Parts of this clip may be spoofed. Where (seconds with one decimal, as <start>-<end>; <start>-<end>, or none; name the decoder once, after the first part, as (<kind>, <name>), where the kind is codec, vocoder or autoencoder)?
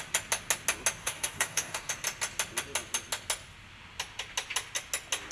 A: 1.0-1.9 (codec, DAC)